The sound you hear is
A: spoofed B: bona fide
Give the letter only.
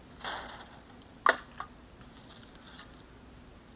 B